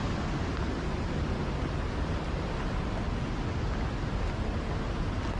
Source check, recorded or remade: recorded